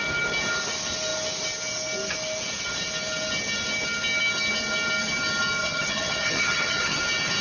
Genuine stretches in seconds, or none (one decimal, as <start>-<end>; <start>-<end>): 0.0-5.6; 7.0-7.4